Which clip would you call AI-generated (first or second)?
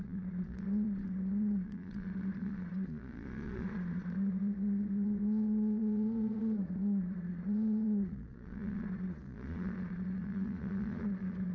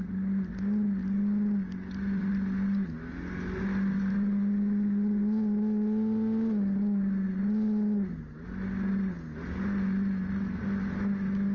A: first